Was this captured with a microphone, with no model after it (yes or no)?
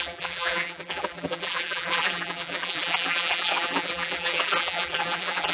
no